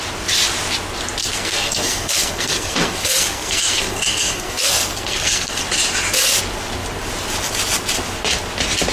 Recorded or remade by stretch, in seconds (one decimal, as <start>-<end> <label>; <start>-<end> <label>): 0.0-1.2 recorded; 1.2-5.6 remade; 5.6-8.9 recorded